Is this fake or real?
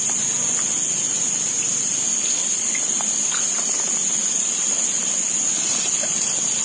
real